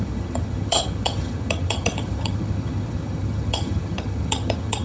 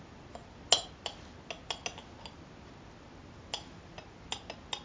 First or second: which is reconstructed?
first